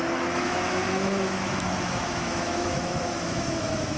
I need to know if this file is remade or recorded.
remade